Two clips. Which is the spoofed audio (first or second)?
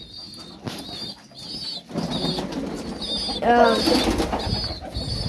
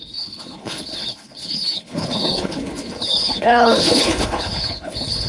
second